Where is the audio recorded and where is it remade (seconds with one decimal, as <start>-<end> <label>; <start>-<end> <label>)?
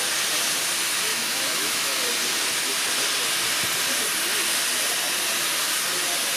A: 0.0-1.1 recorded; 1.1-2.0 remade; 2.0-6.4 recorded